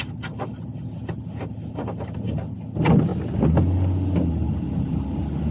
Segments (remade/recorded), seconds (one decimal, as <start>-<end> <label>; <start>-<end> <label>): 0.0-5.5 recorded